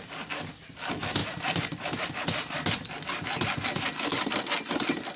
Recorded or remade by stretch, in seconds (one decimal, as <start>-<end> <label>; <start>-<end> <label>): 0.0-5.2 recorded